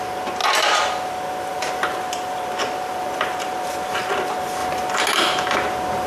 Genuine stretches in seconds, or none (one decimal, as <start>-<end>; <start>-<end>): 0.0-0.4; 4.1-6.1